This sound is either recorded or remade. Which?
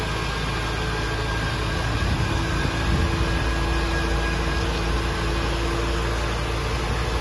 recorded